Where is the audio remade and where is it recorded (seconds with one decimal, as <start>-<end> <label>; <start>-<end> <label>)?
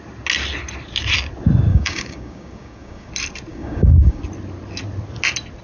0.0-1.7 recorded; 1.7-3.1 remade; 3.1-3.5 recorded; 3.5-4.2 remade; 4.2-5.6 recorded